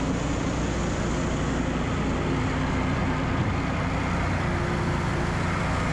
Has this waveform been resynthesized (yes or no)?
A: no